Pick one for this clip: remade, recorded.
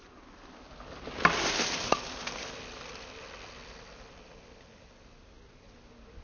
recorded